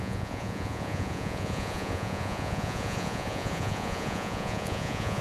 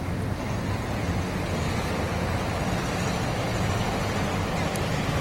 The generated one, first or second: first